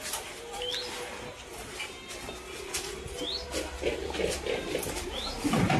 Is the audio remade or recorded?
recorded